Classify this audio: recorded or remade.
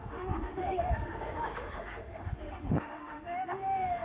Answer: remade